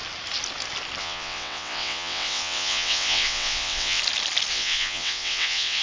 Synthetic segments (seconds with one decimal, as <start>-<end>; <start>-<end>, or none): 1.0-4.0; 4.5-5.8